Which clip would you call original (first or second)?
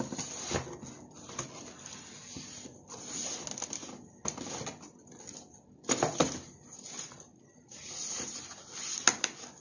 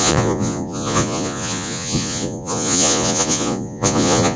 first